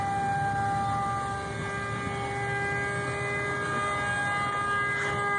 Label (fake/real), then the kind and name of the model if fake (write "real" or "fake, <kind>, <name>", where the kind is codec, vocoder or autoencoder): real